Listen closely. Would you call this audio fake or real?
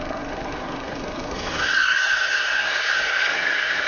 fake